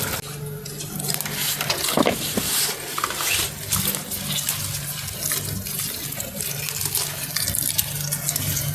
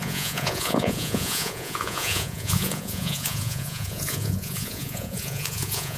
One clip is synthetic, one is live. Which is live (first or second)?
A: first